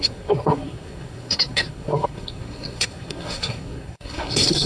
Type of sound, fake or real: fake